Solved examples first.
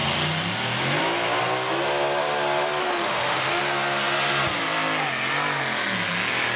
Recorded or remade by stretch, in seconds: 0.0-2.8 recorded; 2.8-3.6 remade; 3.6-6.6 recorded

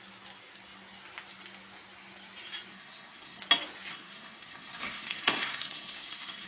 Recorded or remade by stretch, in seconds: 0.0-2.7 recorded; 2.7-3.4 remade; 3.4-3.9 recorded; 3.9-6.5 remade

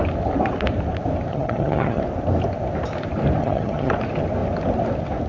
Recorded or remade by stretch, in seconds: 0.0-1.3 recorded; 1.3-2.0 remade; 2.0-3.4 recorded; 3.4-3.9 remade; 3.9-5.3 recorded

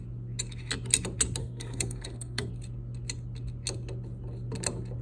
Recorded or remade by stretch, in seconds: 0.0-1.4 recorded; 1.4-2.5 remade; 2.5-5.0 recorded

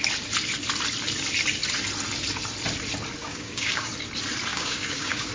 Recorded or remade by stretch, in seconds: 0.0-3.2 recorded; 3.2-3.9 remade; 3.9-4.5 recorded; 4.5-5.3 remade

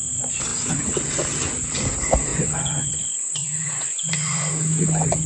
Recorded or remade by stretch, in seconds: 0.0-2.3 recorded; 2.3-2.9 remade; 2.9-3.4 recorded; 3.4-4.5 remade; 4.5-5.3 recorded

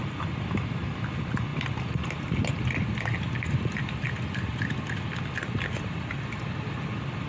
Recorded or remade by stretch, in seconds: 0.0-7.3 recorded

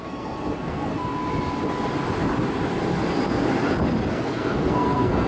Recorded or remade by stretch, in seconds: 0.0-0.9 remade; 0.9-4.1 recorded; 4.1-5.3 remade